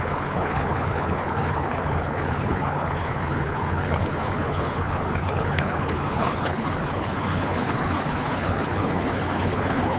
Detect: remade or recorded remade